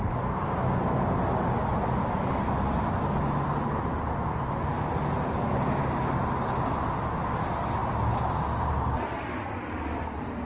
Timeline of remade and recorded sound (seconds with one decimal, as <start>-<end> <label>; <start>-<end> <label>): 0.0-10.5 recorded